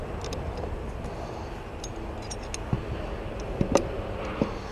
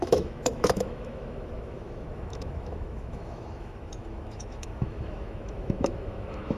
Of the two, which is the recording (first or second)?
first